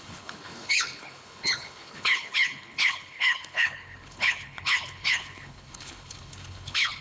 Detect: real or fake fake